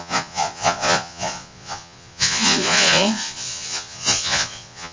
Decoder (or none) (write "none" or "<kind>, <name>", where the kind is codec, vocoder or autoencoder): vocoder, Vocos